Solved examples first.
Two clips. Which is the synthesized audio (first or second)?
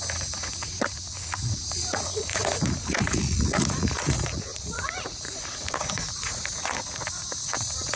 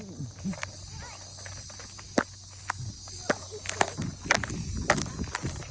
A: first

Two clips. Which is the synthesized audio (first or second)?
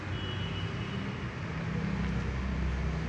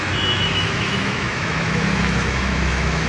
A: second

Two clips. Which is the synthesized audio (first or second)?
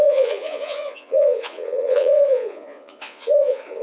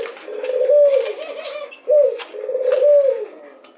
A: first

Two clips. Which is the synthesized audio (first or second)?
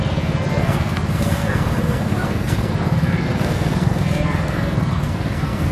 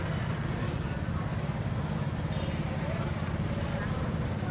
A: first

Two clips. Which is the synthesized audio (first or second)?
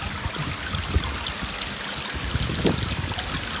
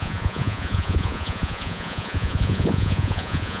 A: second